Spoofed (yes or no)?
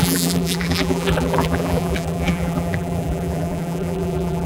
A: yes